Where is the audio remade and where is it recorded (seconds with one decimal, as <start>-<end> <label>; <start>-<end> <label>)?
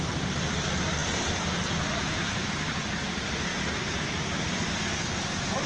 0.0-5.7 remade